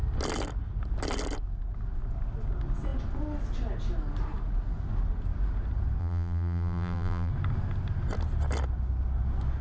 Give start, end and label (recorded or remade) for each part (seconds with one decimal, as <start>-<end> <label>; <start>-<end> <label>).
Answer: 0.0-6.0 recorded; 6.0-7.3 remade; 7.3-9.6 recorded